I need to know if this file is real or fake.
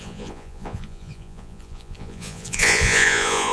fake